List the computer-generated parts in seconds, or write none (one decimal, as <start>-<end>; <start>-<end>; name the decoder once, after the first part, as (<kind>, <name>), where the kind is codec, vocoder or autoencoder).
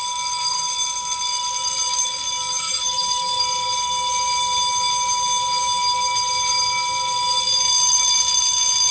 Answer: 2.5-3.4 (autoencoder, DAC-VAE)